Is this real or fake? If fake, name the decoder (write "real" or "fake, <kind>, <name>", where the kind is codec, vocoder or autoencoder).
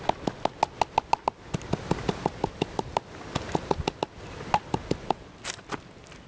real